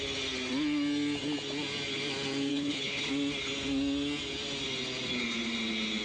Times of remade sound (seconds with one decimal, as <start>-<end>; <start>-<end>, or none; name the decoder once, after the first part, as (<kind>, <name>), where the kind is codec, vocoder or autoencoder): 2.5-3.1 (codec, HILCodec)

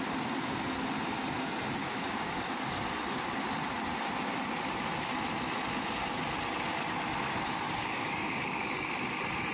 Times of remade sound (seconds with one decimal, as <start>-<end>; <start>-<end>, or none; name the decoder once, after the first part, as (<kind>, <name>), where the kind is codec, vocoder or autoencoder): 1.8-2.6 (codec, DAC); 7.8-8.9